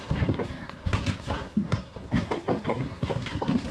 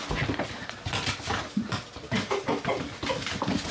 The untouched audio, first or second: second